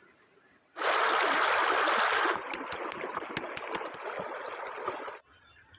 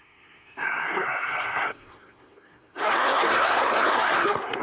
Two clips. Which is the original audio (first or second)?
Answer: first